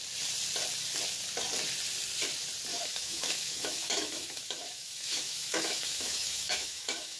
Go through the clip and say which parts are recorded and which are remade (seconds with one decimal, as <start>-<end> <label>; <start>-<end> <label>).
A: 0.0-2.7 recorded; 2.7-7.2 remade